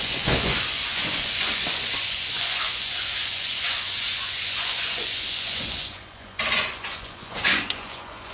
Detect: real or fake fake